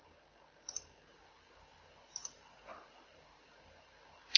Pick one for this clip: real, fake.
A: real